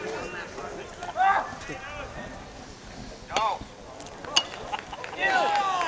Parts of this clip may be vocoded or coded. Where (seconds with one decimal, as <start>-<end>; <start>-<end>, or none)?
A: none